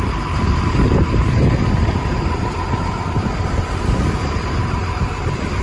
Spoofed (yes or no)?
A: yes